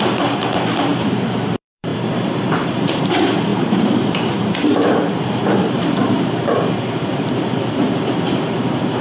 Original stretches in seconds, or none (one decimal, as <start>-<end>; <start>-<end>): none

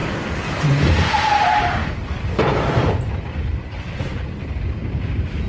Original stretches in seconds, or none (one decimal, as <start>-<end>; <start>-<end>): 0.0-1.8; 5.1-5.5

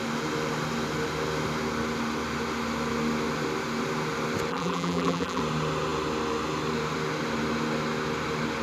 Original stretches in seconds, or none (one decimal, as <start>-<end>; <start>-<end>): 0.0-4.5; 5.4-8.6

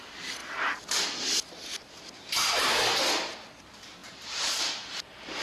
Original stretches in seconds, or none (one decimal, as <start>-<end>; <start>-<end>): 0.0-4.0; 5.0-5.4

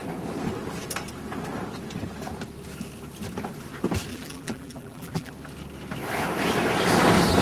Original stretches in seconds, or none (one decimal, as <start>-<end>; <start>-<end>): 0.0-4.1; 5.3-7.4

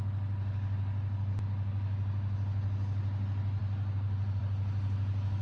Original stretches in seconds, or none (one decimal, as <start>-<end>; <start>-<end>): 0.0-3.6; 4.4-5.4

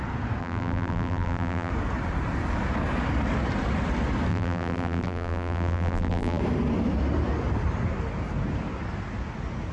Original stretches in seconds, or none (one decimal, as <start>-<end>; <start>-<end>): 0.0-0.4; 1.7-4.3; 6.4-9.7

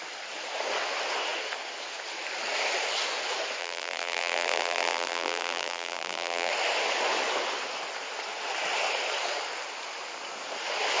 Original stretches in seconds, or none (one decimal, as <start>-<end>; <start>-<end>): 0.0-3.6; 6.5-11.0